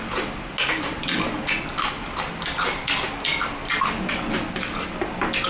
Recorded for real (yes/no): yes